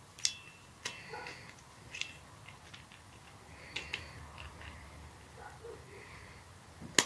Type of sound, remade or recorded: recorded